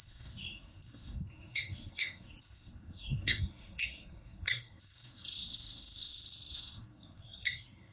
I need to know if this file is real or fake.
fake